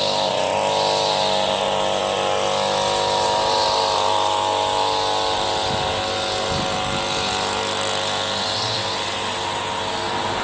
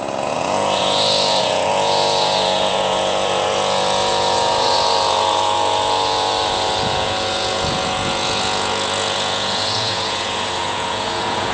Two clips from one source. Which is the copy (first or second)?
second